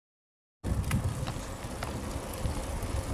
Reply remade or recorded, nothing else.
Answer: recorded